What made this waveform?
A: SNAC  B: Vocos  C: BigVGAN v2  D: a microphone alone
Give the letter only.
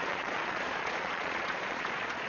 B